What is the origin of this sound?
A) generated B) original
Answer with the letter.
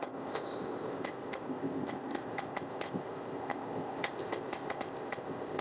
A